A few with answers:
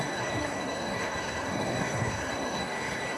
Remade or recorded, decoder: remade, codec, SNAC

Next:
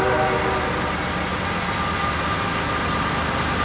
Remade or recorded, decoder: recorded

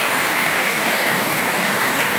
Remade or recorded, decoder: remade, codec, DAC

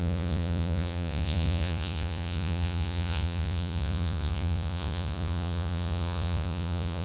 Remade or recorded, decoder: remade, vocoder, Vocos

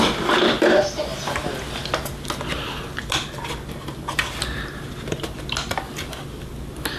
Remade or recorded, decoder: recorded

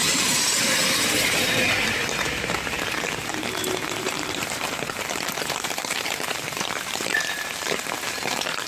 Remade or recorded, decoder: remade, vocoder, BigVGAN v2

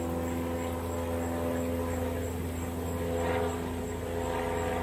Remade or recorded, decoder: recorded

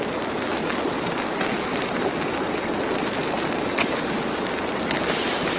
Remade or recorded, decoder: recorded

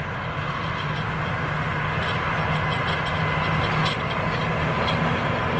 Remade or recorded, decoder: recorded